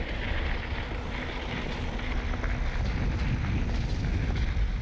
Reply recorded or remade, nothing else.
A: recorded